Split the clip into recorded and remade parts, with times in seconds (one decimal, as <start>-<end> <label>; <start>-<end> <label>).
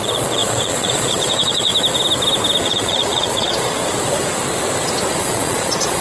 0.0-1.7 remade; 1.7-2.6 recorded; 2.6-3.8 remade; 3.8-5.2 recorded; 5.2-6.0 remade